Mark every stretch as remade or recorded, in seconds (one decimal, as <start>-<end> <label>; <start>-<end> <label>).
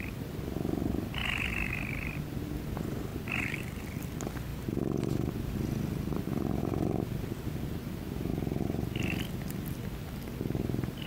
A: 0.0-3.1 recorded; 3.1-3.9 remade; 3.9-4.5 recorded; 4.5-6.6 remade; 6.6-11.1 recorded